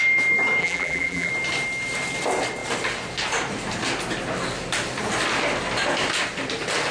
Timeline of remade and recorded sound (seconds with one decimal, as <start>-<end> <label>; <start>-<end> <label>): 0.0-0.6 recorded; 0.6-1.3 remade; 1.3-6.9 recorded